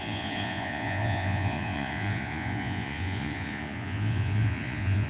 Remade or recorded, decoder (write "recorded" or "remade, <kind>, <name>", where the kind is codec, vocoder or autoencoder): remade, vocoder, Vocos